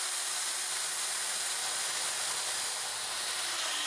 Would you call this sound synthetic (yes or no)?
no